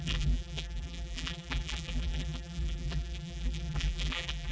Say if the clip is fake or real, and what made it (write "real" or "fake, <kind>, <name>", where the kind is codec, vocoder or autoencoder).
fake, vocoder, BigVGAN v2